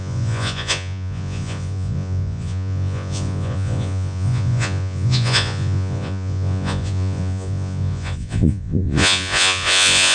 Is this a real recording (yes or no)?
no